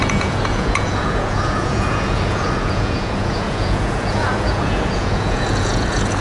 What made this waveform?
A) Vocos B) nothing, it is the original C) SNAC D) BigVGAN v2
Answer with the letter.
A